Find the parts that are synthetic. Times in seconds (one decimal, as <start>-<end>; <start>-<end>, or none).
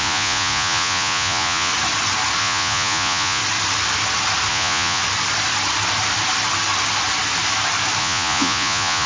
0.0-1.7; 2.4-3.4; 4.5-5.0; 8.0-9.1